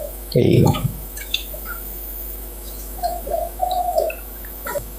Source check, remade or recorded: remade